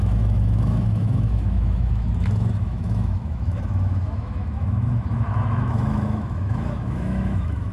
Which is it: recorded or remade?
remade